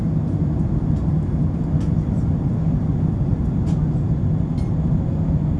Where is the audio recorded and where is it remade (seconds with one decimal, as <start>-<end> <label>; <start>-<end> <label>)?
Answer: 0.0-5.6 recorded